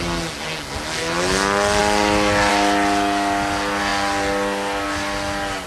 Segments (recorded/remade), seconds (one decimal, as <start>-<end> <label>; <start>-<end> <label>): 0.0-5.7 recorded